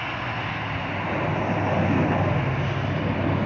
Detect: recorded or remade recorded